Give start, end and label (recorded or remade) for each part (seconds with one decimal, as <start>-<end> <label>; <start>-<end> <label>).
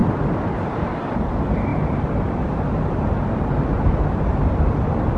0.0-1.2 remade; 1.2-1.7 recorded; 1.7-2.7 remade; 2.7-5.2 recorded